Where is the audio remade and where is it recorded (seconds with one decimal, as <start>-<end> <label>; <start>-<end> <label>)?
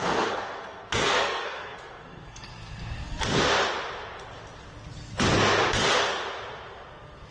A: 0.0-2.5 remade; 2.5-7.3 recorded